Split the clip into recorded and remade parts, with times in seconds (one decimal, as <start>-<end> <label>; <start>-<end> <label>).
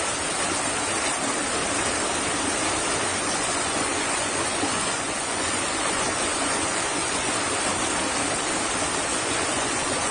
0.0-3.1 recorded; 3.1-7.3 remade; 7.3-9.1 recorded; 9.1-10.1 remade